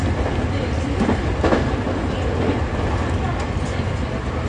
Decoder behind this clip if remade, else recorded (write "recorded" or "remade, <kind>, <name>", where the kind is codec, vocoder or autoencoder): recorded